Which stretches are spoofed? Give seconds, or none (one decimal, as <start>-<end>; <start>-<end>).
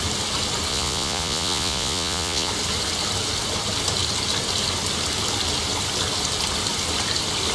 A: 0.7-2.5